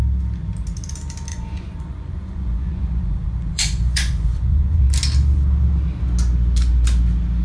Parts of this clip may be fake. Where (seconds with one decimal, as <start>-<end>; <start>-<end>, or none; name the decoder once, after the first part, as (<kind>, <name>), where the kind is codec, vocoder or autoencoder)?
1.3-4.8 (vocoder, Vocos)